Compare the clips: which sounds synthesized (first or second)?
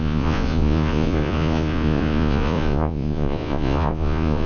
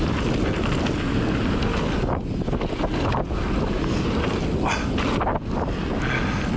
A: first